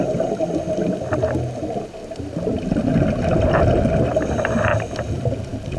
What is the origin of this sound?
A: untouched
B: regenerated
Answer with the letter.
A